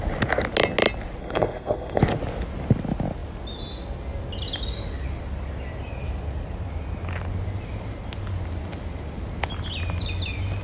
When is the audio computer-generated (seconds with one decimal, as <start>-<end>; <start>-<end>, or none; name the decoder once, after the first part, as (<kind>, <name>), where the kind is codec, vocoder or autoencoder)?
1.2-2.0 (codec, SNAC)

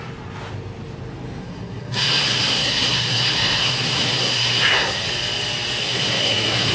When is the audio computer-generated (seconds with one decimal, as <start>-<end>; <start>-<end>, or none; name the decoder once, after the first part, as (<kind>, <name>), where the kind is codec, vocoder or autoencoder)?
1.4-5.1 (codec, SNAC); 5.8-6.7

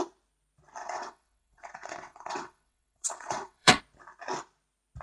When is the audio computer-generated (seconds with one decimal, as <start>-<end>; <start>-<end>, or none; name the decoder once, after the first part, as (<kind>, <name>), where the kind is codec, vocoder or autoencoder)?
0.8-3.8 (vocoder, WaveNeXt)

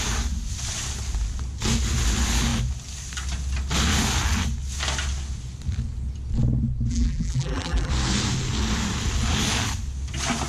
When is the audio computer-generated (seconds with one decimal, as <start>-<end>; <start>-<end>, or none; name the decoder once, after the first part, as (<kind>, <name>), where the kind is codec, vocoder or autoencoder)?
6.9-7.9 (vocoder, BigVGAN v2)

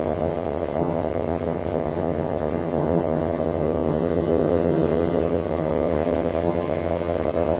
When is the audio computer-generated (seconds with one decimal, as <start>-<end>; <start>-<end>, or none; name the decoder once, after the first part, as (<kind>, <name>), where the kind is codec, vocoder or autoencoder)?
0.0-7.6 (vocoder, HiFi-GAN)

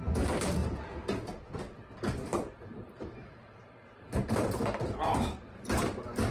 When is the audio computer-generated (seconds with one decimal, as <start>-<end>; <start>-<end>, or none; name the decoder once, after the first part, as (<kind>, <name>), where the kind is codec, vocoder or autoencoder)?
2.3-6.3 (vocoder, BigVGAN v2)

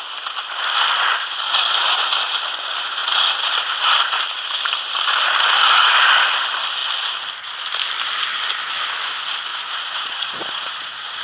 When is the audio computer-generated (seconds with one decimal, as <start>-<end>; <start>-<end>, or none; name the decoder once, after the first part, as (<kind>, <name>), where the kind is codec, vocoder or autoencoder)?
3.0-3.5 (vocoder, Vocos); 9.5-11.2